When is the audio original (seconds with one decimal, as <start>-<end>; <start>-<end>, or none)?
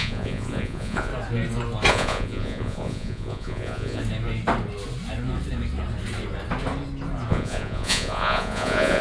1.1-1.9; 4.0-7.3